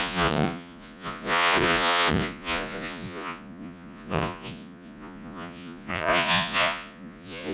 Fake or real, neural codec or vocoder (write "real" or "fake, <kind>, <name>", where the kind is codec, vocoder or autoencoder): fake, vocoder, Vocos